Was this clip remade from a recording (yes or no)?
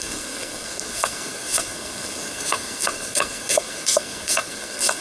yes